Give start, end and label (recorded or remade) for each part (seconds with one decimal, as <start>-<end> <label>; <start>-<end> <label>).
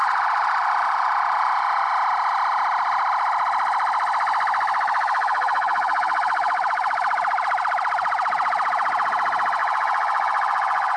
0.0-1.9 remade; 1.9-9.6 recorded; 9.6-11.0 remade